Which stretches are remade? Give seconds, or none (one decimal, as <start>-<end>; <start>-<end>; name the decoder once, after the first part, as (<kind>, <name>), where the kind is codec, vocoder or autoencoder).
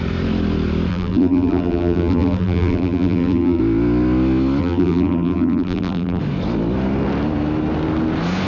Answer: 0.9-3.6 (vocoder, BigVGAN v2); 4.6-6.2